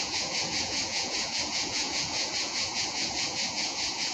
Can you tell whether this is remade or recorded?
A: remade